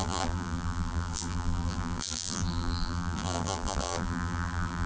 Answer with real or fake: fake